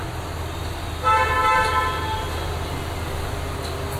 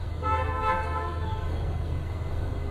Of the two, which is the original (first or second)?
first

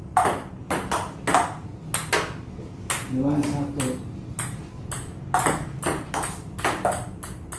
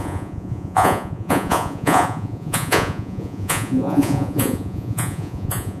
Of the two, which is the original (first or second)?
first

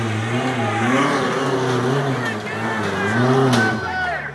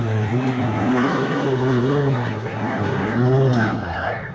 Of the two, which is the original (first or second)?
first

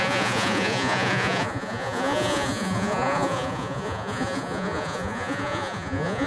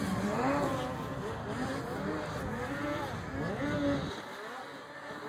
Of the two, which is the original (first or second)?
second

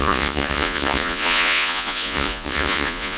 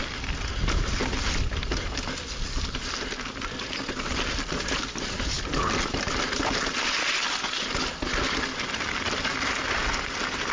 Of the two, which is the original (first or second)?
second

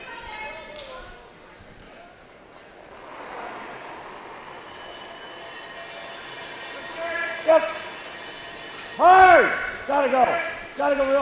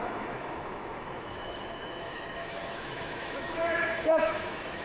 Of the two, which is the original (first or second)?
first